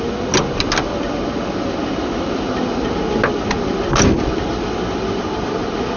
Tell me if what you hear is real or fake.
real